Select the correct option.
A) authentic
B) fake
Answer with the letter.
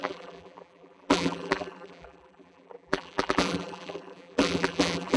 B